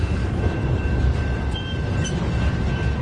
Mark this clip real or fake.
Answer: real